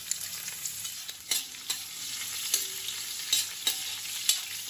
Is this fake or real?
real